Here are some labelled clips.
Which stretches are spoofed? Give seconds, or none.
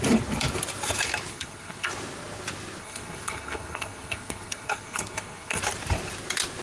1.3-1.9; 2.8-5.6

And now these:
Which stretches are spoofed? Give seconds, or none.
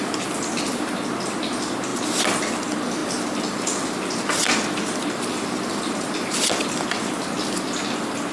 none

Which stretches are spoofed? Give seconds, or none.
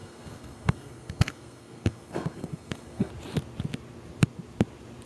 0.0-3.1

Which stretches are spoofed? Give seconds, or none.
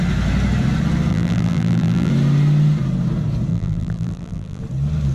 1.1-2.1; 3.5-4.6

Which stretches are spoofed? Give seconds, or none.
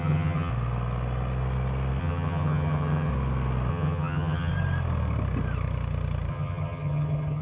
0.0-0.5; 2.0-3.1; 3.7-4.5; 6.3-7.4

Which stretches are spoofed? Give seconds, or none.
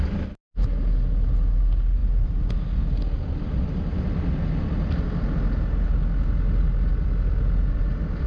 none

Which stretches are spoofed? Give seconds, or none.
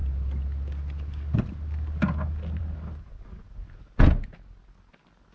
none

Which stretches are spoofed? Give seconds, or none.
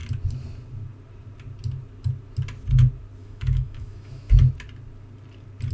3.2-4.3